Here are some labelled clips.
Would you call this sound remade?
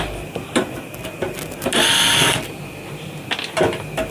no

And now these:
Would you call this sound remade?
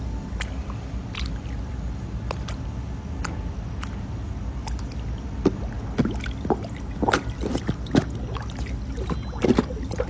no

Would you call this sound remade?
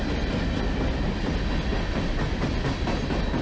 no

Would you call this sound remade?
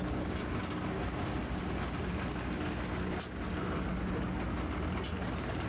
no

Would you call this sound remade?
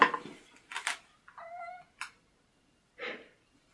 no